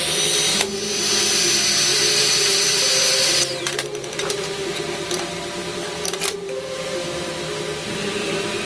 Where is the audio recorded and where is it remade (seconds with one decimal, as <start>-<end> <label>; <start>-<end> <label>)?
0.0-1.9 recorded; 1.9-2.6 remade; 2.6-3.1 recorded; 3.1-7.3 remade; 7.3-8.7 recorded